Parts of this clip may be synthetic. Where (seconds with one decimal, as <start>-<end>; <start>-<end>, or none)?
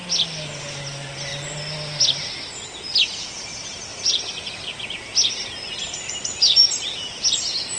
none